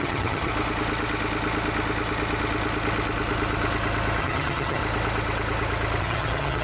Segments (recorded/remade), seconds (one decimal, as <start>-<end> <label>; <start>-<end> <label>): 0.0-0.5 remade; 0.5-4.2 recorded; 4.2-4.8 remade; 4.8-6.0 recorded; 6.0-6.6 remade